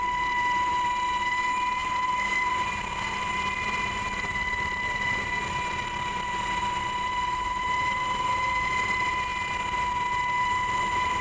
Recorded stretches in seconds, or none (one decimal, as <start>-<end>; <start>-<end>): 9.3-10.4